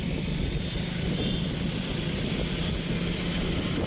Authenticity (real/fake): real